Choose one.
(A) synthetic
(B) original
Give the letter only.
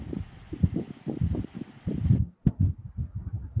B